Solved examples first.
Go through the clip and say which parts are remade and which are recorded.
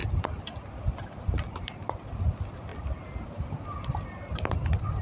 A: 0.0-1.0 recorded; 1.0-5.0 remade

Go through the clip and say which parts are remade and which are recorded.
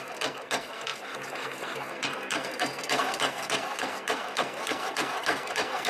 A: 0.0-5.9 remade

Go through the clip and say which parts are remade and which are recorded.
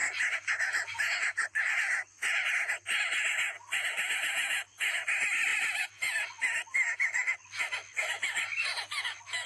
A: 0.0-9.5 recorded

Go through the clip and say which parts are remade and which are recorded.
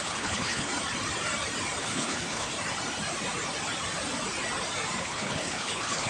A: 0.0-0.7 remade; 0.7-1.8 recorded; 1.8-2.5 remade; 2.5-5.0 recorded; 5.0-6.1 remade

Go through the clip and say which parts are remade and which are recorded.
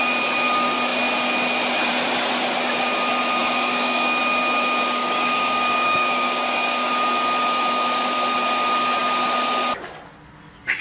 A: 0.0-3.4 recorded; 3.4-4.2 remade; 4.2-5.0 recorded; 5.0-6.9 remade; 6.9-10.8 recorded